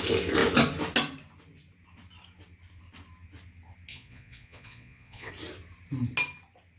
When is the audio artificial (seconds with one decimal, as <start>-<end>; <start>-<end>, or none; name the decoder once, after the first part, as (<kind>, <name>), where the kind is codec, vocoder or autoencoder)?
3.9-5.3 (vocoder, Vocos)